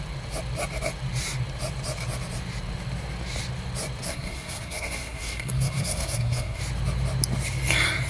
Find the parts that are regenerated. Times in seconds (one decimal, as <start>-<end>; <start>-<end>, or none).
4.1-6.6